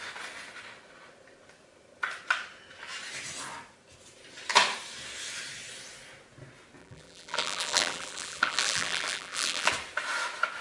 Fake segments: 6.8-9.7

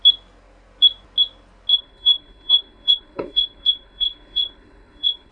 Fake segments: 1.7-5.3